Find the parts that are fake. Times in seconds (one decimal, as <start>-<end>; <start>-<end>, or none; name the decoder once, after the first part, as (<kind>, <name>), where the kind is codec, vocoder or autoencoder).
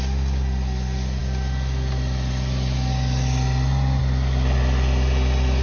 none